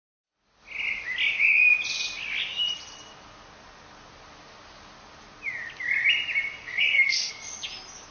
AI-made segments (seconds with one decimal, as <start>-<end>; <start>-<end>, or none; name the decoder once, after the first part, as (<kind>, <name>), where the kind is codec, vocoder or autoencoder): 6.6-7.3 (codec, SNAC)